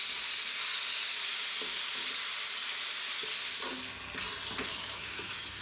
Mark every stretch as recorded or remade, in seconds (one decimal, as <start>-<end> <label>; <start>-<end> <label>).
0.0-4.7 recorded; 4.7-5.6 remade